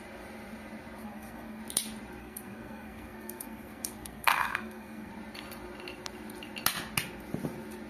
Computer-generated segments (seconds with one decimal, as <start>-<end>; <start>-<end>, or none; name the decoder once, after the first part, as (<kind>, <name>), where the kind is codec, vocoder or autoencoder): 1.0-1.6 (codec, SNAC); 2.2-5.1